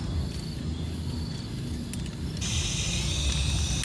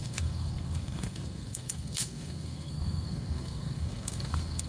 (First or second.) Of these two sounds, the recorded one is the first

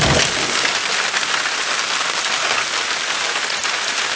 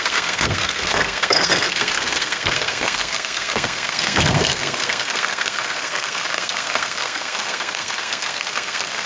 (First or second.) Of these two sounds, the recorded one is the first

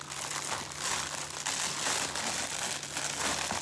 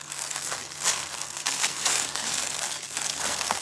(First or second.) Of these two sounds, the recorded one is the first